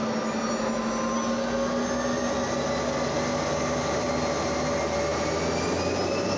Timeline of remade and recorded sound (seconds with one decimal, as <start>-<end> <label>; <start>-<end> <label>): 0.0-6.4 recorded